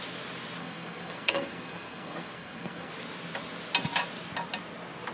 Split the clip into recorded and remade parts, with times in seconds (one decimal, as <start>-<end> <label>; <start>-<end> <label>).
0.0-0.6 recorded; 0.6-2.9 remade; 2.9-5.1 recorded

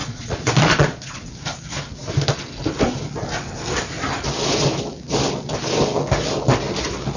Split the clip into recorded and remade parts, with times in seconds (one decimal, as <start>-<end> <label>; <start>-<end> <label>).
0.0-1.3 remade; 1.3-7.2 recorded

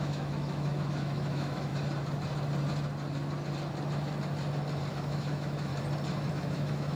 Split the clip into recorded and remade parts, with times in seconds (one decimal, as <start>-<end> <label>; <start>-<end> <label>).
0.0-1.7 remade; 1.7-4.9 recorded; 4.9-5.7 remade; 5.7-6.3 recorded; 6.3-7.0 remade

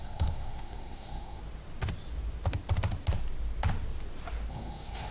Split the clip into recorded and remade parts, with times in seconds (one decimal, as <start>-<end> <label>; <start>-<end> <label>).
0.0-1.4 remade; 1.4-4.5 recorded; 4.5-5.1 remade

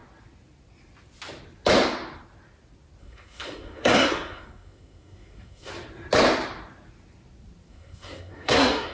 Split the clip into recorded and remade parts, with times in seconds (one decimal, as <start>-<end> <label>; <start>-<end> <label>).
0.0-3.0 recorded; 3.0-5.7 remade; 5.7-7.7 recorded; 7.7-8.9 remade

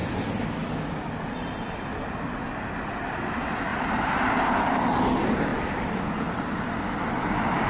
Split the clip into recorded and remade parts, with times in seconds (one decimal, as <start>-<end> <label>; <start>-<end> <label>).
0.0-3.7 recorded; 3.7-4.5 remade; 4.5-7.7 recorded

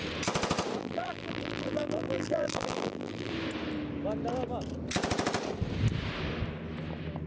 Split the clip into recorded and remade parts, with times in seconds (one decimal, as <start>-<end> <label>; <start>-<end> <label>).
0.0-0.8 recorded; 0.8-3.3 remade; 3.3-7.3 recorded

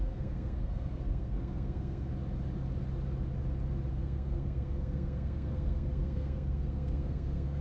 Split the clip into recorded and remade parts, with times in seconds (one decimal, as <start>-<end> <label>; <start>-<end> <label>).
0.0-2.1 remade; 2.1-3.9 recorded; 3.9-7.6 remade